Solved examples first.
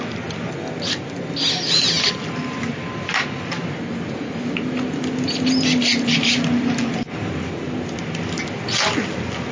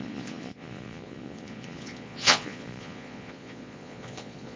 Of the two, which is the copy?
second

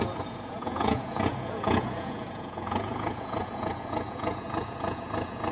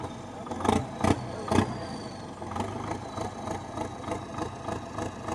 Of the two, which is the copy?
first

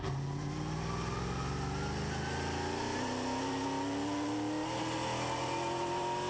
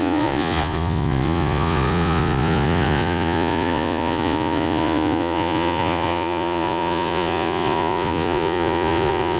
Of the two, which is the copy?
second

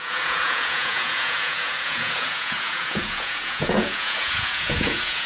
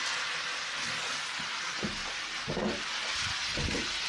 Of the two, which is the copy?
first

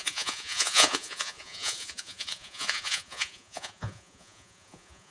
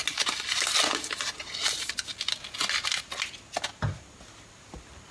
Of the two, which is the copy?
first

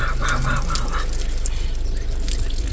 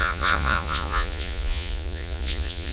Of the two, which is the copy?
second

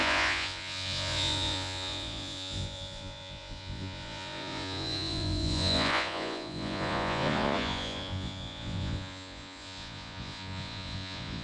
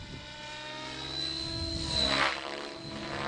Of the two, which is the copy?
first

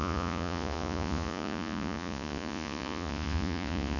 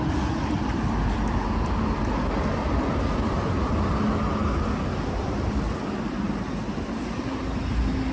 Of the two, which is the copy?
first